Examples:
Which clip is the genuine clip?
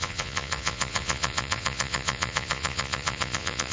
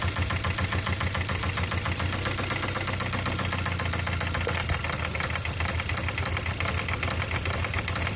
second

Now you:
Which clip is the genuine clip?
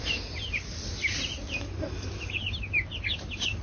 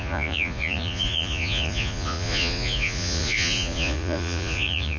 first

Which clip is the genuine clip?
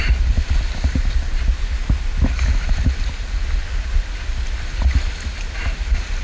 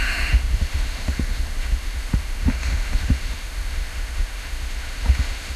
first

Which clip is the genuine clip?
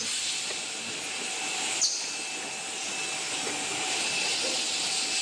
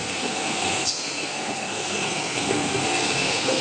first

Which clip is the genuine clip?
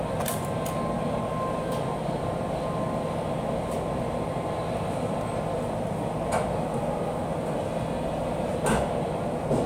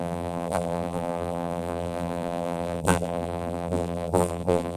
first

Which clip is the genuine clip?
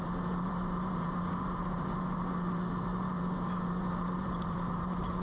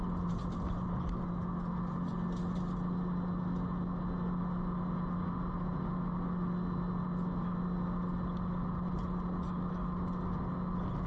second